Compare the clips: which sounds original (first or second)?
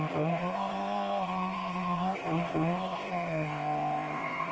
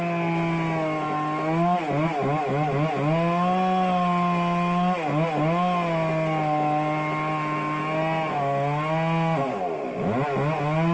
second